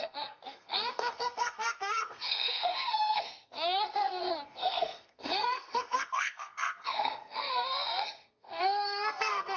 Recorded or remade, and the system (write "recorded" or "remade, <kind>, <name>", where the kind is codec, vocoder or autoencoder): remade, codec, SNAC